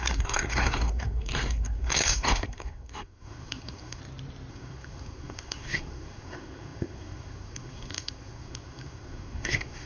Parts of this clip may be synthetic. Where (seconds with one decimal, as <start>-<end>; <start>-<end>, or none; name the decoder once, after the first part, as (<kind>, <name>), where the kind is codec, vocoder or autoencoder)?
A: 0.0-4.0 (codec, SNAC); 4.5-9.9